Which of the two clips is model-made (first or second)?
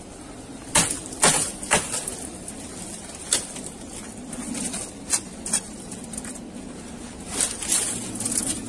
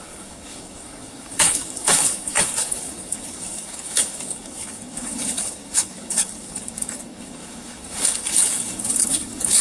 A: second